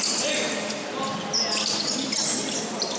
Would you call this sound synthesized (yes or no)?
no